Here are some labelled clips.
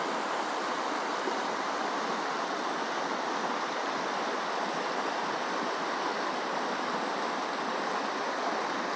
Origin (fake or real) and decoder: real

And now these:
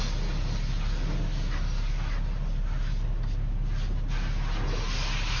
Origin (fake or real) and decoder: real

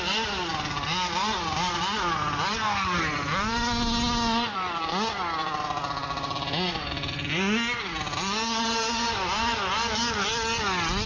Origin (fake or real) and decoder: real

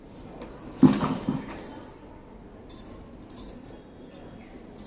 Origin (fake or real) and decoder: real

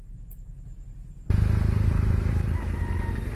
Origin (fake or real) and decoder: real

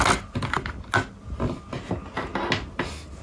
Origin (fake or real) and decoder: real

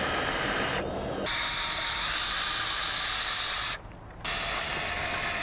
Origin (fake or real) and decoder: real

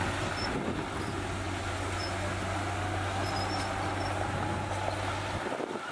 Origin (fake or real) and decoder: real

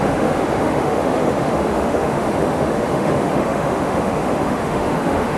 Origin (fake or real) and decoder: fake, autoencoder, DAC-VAE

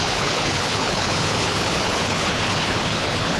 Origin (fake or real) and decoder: fake, codec, HILCodec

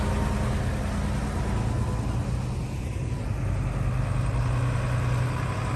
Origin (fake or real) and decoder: real